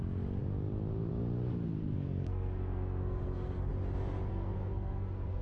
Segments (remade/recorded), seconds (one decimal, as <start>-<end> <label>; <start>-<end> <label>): 0.0-1.8 recorded; 1.8-3.7 remade; 3.7-4.3 recorded; 4.3-5.4 remade